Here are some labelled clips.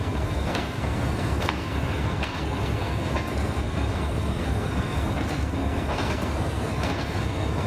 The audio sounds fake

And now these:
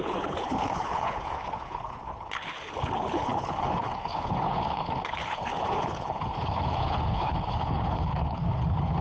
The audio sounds fake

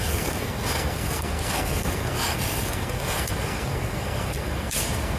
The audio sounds fake